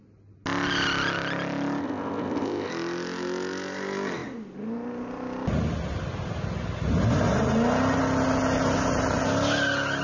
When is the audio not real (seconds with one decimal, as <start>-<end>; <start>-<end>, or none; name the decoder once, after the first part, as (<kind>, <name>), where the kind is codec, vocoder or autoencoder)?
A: 1.8-2.7 (codec, ZipCodec)